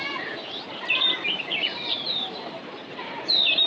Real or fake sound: fake